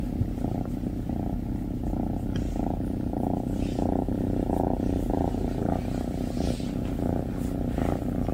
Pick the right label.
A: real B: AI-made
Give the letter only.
A